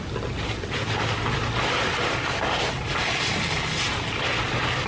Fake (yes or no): no